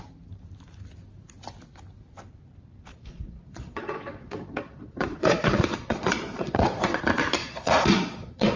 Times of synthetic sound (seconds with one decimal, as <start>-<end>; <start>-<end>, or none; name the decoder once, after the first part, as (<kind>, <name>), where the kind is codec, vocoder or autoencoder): 2.9-7.0 (vocoder, Vocos); 7.4-8.6